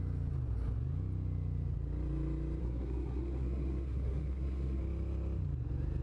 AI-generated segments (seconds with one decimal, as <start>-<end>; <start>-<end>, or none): 2.6-4.8